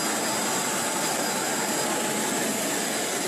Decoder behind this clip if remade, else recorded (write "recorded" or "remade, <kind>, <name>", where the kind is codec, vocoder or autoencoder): recorded